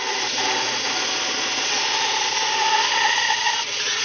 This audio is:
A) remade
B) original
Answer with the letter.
B